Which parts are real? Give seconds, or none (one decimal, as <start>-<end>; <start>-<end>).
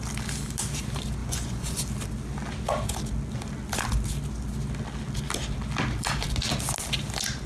0.0-1.2; 1.8-7.5